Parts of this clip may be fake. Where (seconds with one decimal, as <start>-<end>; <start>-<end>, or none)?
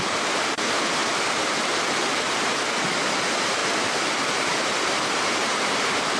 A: none